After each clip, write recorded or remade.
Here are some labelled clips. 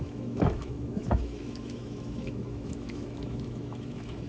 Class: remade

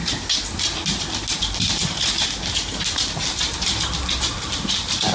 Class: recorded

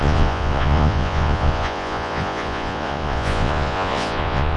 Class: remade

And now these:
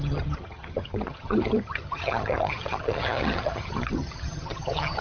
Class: remade